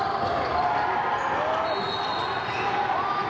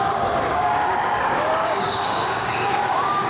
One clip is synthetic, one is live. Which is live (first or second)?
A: first